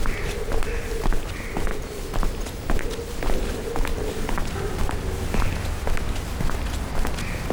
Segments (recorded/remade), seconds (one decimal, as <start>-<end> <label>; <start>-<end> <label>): 0.0-7.5 recorded